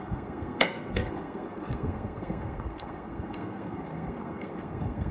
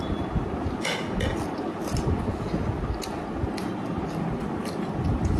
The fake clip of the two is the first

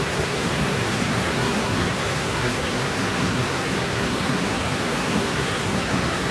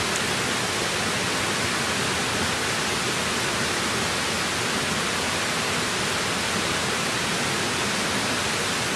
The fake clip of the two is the first